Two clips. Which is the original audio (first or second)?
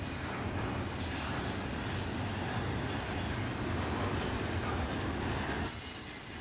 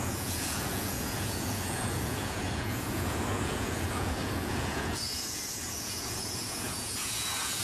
first